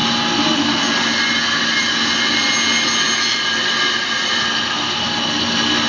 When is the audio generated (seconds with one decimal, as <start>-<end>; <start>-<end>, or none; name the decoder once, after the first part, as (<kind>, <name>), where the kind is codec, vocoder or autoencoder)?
none